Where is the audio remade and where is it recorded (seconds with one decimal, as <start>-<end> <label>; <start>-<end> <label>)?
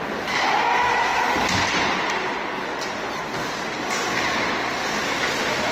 0.0-5.0 recorded; 5.0-5.7 remade